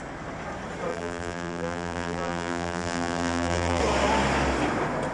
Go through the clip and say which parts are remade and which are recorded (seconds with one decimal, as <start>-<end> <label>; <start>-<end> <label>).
0.0-0.9 recorded; 0.9-3.8 remade; 3.8-5.1 recorded